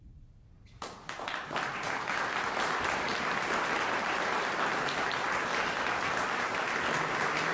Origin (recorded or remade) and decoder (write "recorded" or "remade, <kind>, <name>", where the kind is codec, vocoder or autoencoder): recorded